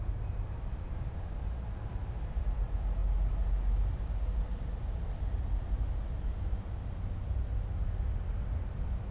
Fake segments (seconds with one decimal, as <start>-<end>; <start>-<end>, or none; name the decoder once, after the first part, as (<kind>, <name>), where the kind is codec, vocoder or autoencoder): none